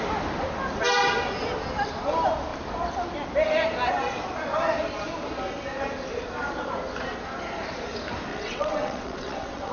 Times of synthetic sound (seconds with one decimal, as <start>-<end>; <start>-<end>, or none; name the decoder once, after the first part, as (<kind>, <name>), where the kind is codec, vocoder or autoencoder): 8.3-9.7 (vocoder, WaveNeXt)